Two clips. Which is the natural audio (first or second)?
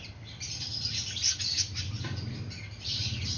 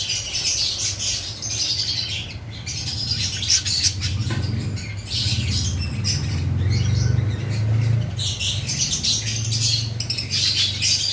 second